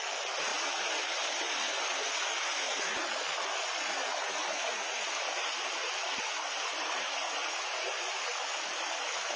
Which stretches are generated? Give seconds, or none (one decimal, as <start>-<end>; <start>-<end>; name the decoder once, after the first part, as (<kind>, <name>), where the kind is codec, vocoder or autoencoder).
none